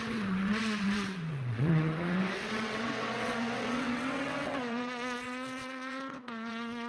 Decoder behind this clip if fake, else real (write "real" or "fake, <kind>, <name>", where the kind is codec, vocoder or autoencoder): fake, vocoder, WaveNeXt